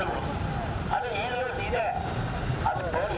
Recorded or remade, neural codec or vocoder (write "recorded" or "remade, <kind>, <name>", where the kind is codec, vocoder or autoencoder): recorded